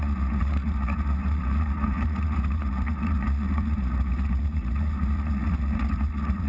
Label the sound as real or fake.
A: fake